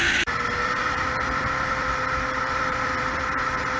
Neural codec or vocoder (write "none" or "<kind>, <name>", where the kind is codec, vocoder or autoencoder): vocoder, BigVGAN v2